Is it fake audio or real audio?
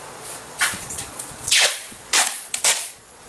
fake